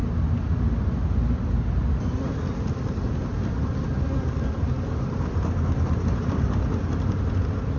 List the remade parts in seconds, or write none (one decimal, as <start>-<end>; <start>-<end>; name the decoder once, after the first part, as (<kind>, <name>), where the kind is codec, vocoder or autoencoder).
none

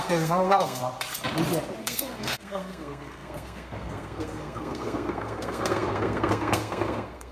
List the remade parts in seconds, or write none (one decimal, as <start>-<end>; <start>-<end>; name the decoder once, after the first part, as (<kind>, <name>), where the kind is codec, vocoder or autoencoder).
0.0-0.8 (codec, SNAC); 1.8-7.3

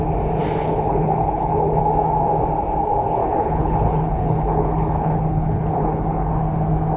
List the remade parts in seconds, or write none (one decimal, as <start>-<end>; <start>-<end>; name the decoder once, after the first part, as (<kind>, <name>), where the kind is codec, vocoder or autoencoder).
0.6-1.8 (codec, HILCodec); 3.2-6.3

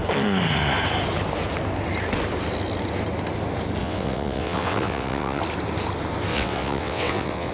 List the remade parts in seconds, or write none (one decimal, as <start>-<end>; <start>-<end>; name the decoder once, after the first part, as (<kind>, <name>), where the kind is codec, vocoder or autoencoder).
3.8-5.4 (vocoder, WaveNeXt); 6.3-7.5

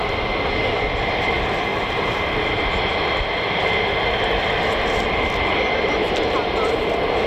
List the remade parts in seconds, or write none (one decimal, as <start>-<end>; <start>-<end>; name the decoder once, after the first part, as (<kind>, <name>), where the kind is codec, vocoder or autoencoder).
none

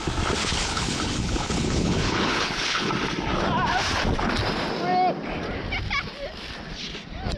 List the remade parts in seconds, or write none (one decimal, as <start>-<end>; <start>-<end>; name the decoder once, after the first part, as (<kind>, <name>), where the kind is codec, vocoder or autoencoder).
0.4-2.9 (codec, HILCodec)